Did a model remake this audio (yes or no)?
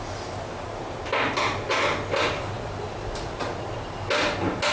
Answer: no